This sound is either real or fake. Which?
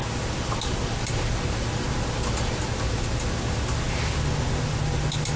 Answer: real